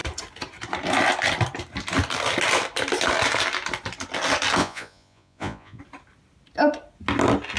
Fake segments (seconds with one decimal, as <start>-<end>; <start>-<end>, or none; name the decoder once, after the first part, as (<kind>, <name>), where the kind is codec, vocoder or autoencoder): 4.6-5.8 (vocoder, Vocos)